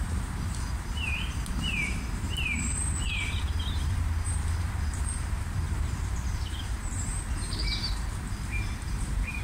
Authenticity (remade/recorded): remade